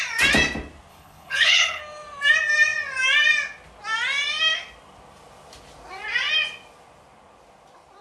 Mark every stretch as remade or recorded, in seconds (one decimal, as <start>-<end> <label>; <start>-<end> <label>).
0.0-0.9 recorded; 0.9-1.8 remade; 1.8-8.0 recorded